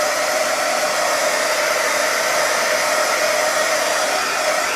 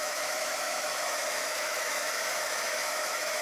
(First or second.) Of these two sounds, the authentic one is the first